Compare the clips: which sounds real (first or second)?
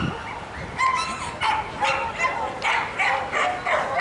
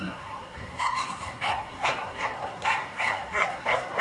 first